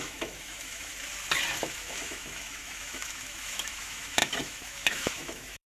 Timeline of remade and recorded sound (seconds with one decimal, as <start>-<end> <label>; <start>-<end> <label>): 0.0-0.9 remade; 0.9-1.6 recorded; 1.6-5.7 remade